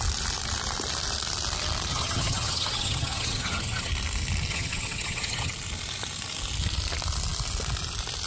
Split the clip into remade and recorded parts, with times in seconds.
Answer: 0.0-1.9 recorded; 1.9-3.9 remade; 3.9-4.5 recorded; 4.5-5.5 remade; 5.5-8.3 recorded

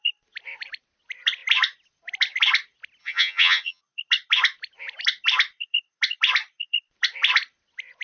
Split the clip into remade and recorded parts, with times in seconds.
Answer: 0.0-3.0 recorded; 3.0-3.8 remade; 3.8-8.0 recorded

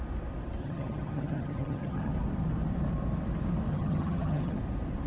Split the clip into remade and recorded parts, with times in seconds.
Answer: 0.0-0.6 recorded; 0.6-2.1 remade; 2.1-3.7 recorded; 3.7-4.6 remade; 4.6-5.1 recorded

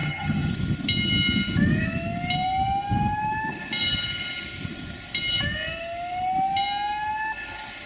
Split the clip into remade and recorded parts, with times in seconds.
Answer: 0.0-0.5 remade; 0.5-7.9 recorded

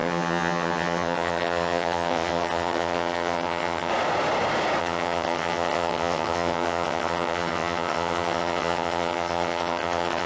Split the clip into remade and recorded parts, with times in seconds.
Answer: 0.0-3.9 remade; 3.9-4.8 recorded; 4.8-10.3 remade